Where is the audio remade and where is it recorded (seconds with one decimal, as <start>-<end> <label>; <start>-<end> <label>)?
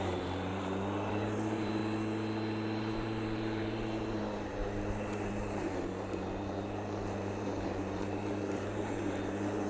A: 0.0-0.5 remade; 0.5-1.1 recorded; 1.1-1.8 remade; 1.8-2.8 recorded; 2.8-4.6 remade; 4.6-5.3 recorded; 5.3-9.7 remade